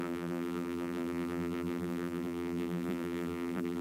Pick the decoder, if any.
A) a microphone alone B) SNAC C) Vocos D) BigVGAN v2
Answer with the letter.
D